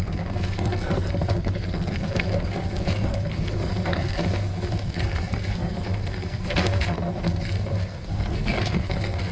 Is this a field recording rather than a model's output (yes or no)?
no